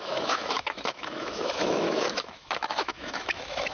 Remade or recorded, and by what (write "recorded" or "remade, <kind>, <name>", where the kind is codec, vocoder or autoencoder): remade, autoencoder, DAC-VAE